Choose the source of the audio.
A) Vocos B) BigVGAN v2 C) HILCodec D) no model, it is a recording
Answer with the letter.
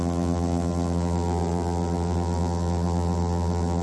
B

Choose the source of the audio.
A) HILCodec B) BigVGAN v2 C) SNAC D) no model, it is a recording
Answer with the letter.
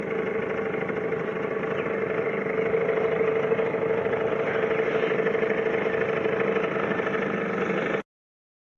D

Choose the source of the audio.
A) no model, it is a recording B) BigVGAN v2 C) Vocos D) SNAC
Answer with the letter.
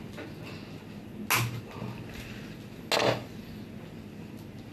A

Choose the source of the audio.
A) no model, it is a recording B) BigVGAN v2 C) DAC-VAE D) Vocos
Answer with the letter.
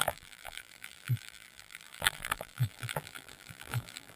B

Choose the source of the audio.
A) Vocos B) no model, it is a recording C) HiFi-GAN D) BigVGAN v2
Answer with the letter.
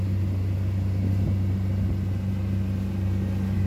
B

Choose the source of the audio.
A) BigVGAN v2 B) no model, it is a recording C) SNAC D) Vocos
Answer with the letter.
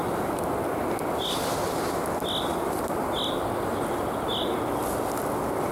B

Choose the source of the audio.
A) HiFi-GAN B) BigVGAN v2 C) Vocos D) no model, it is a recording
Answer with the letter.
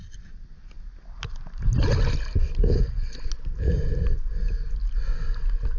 D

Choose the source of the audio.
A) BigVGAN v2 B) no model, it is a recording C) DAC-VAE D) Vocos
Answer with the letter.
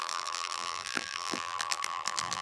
A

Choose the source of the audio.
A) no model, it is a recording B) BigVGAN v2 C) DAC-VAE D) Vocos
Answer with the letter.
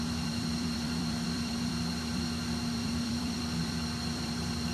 B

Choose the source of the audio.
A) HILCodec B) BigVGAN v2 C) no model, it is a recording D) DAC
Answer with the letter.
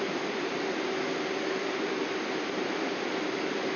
C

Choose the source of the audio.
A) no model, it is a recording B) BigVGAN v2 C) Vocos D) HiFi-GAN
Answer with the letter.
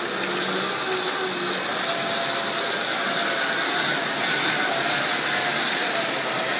A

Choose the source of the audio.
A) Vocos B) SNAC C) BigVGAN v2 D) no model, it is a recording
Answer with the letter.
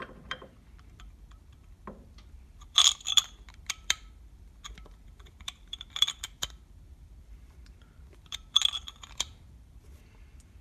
C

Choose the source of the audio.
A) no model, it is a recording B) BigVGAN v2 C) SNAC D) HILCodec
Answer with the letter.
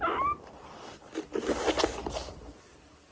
B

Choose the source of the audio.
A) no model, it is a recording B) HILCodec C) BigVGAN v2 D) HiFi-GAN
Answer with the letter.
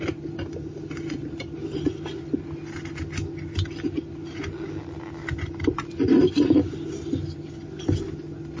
A